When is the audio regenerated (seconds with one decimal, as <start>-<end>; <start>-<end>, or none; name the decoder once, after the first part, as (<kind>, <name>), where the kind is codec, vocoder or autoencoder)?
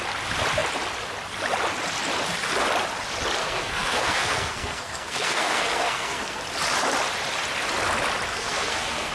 3.4-6.4 (codec, SNAC); 8.3-9.1